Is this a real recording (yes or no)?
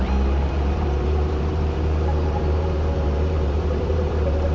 no